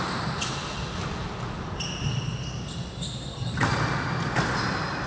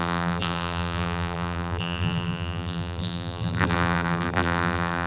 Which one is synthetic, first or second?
second